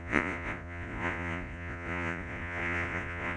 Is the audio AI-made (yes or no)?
yes